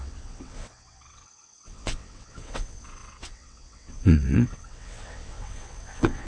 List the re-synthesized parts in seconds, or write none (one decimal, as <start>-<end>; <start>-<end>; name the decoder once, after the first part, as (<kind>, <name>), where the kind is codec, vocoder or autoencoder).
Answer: 0.0-6.3 (vocoder, WaveNeXt)